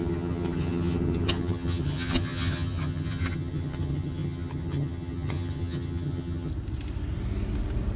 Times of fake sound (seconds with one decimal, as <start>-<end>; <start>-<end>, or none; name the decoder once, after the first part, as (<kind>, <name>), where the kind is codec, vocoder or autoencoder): 0.0-6.5 (vocoder, HiFi-GAN)